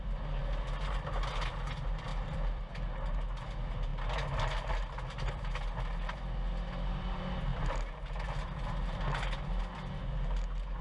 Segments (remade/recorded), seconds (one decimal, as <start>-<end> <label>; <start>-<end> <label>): 0.0-2.1 recorded; 2.1-2.7 remade; 2.7-10.8 recorded